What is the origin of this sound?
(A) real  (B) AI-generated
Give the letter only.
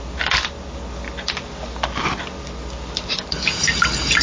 A